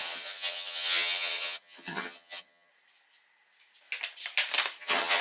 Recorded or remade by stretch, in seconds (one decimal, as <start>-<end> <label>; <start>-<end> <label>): 0.0-2.7 remade; 2.7-4.8 recorded; 4.8-5.2 remade